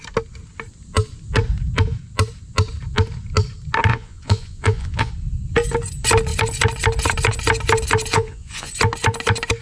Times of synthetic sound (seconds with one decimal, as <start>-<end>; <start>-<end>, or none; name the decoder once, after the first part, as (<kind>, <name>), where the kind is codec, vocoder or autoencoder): 3.9-5.1 (vocoder, Vocos); 8.1-8.7